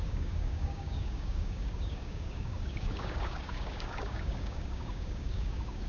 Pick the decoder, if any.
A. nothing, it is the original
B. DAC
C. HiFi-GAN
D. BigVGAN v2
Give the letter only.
B